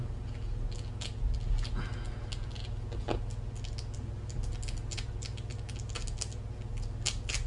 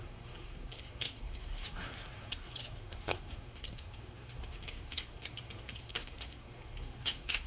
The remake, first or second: second